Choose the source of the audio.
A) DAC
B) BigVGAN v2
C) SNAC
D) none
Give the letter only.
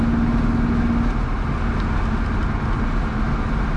D